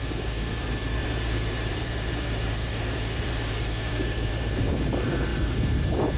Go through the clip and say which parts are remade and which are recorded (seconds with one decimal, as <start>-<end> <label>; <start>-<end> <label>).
0.0-1.0 recorded; 1.0-4.7 remade; 4.7-6.2 recorded